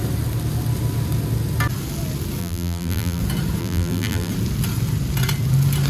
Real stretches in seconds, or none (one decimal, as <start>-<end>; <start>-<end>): 0.0-2.4; 3.2-3.6; 4.3-5.9